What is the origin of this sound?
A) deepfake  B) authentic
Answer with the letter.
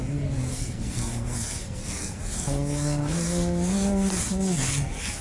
A